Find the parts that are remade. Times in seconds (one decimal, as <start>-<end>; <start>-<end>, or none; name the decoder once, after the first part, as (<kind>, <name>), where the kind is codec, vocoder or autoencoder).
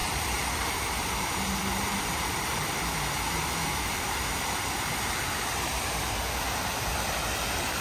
0.0-2.8 (vocoder, BigVGAN v2)